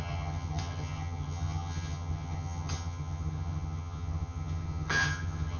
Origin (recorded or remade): remade